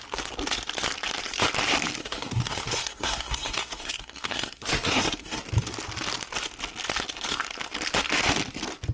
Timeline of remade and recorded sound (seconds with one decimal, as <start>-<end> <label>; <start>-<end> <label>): 0.0-2.0 recorded; 2.0-5.4 remade; 5.4-8.9 recorded